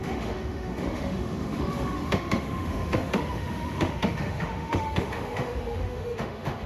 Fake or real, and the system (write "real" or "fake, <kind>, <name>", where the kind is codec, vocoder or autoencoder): fake, autoencoder, DAC-VAE